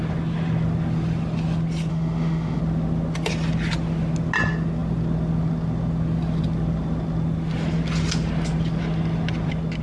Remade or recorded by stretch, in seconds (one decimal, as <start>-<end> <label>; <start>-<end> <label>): 0.0-1.9 recorded; 1.9-2.6 remade; 2.6-9.8 recorded